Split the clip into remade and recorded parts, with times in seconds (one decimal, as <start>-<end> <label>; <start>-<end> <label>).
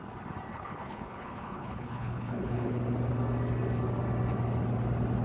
0.0-0.5 recorded; 0.5-2.8 remade; 2.8-5.2 recorded